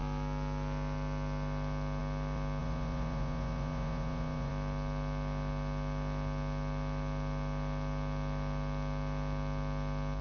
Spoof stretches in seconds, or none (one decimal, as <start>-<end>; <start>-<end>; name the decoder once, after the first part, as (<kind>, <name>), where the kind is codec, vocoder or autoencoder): 2.6-4.5 (vocoder, Vocos)